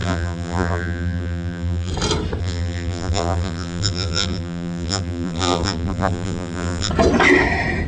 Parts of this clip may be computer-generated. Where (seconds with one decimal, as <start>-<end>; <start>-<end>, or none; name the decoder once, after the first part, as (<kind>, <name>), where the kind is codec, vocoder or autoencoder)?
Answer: 0.0-1.9 (vocoder, BigVGAN v2); 2.4-6.9